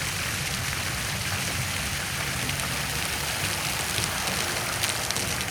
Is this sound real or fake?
real